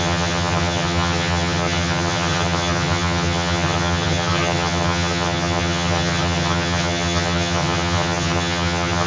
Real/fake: fake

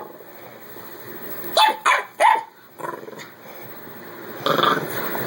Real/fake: real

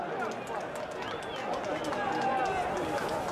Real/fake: real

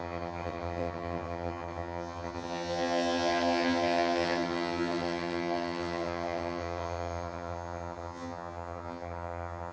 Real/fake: fake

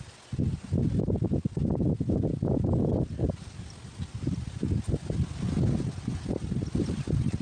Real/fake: real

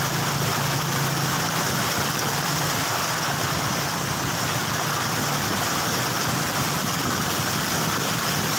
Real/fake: real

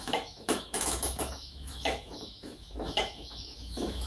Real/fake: fake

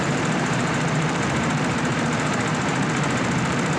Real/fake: fake